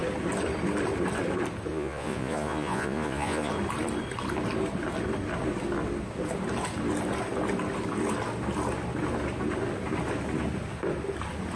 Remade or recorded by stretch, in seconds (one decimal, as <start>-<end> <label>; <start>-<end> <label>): 0.0-1.7 recorded; 1.7-3.5 remade; 3.5-11.6 recorded